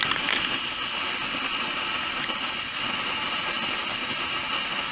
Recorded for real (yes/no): yes